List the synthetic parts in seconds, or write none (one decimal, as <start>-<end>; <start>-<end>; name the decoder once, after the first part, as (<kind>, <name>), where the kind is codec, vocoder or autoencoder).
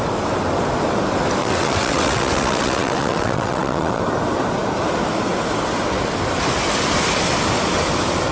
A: 1.4-4.0 (vocoder, WaveNeXt)